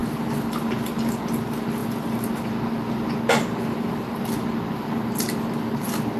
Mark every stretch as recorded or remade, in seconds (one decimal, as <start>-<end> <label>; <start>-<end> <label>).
0.0-6.2 recorded